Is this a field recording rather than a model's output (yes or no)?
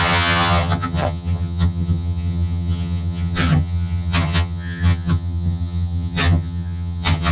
no